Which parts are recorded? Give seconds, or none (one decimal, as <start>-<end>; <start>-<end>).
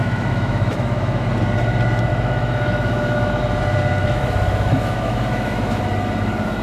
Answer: 1.3-2.1; 3.4-4.0; 5.8-6.6